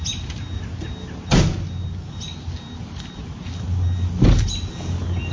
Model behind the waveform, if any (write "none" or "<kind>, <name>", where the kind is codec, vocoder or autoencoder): none